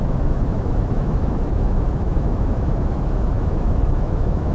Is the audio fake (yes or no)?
yes